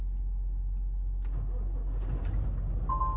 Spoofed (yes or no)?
no